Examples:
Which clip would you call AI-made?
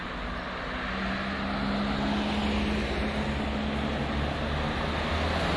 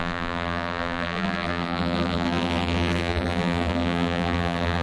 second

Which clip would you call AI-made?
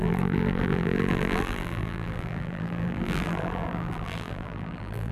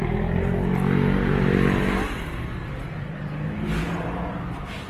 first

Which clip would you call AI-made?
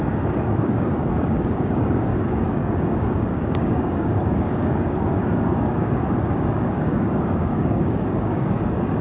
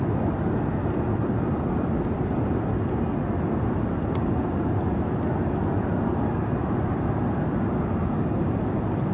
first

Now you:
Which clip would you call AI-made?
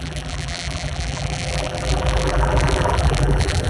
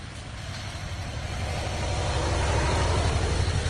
first